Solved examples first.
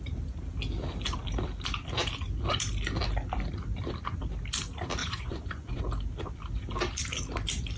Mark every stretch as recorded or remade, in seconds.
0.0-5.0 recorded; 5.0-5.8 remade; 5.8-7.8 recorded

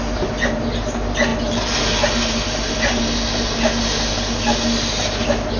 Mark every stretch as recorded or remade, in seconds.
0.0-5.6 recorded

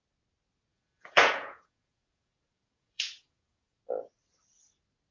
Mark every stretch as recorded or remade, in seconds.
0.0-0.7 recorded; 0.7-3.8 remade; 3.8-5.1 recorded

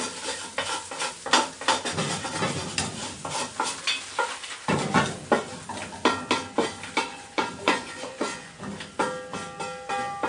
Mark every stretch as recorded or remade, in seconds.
0.0-7.1 recorded; 7.1-8.5 remade; 8.5-10.3 recorded